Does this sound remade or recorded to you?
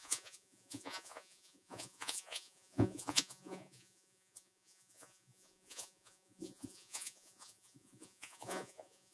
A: remade